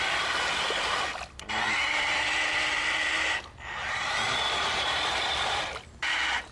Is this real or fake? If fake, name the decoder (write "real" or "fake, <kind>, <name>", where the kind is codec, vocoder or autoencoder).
real